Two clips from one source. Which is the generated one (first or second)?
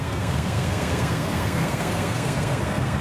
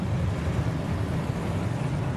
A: first